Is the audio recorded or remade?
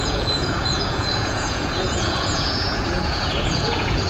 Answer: remade